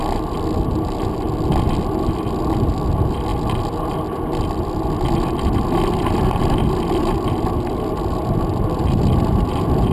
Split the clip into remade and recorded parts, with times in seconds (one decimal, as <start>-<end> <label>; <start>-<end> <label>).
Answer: 0.0-9.9 recorded